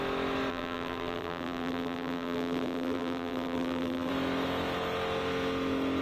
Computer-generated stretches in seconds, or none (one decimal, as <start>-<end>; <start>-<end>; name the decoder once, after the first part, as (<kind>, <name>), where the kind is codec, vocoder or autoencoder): 0.5-4.1 (vocoder, BigVGAN v2)